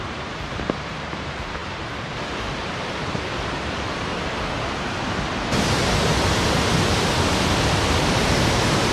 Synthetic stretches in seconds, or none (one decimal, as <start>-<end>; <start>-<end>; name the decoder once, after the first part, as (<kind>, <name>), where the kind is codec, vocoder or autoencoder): 0.0-4.1 (vocoder, BigVGAN v2); 5.0-6.1; 7.1-8.9